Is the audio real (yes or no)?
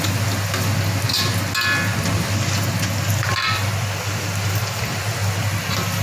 yes